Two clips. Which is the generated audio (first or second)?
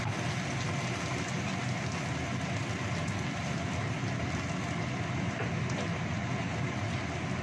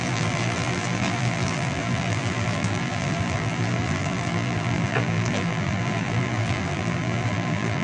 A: second